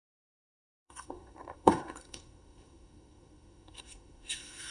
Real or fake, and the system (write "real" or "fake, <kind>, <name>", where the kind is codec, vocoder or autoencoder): fake, codec, SNAC